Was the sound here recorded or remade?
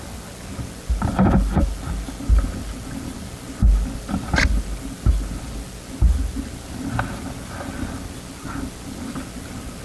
recorded